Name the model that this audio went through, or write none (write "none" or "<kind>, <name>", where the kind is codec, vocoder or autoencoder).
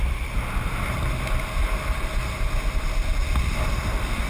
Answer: none